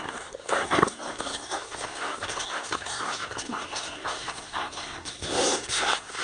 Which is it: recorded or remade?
remade